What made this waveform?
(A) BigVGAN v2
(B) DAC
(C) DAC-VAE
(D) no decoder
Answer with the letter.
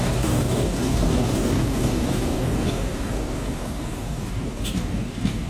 B